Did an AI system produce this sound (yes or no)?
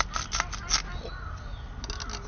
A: no